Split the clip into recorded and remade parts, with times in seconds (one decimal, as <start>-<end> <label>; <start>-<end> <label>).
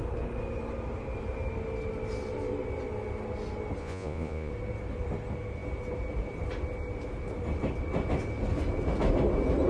0.0-3.8 recorded; 3.8-4.5 remade; 4.5-9.7 recorded